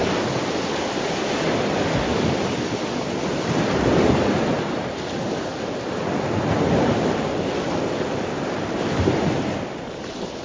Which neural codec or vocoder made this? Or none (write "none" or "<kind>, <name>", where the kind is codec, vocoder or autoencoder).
none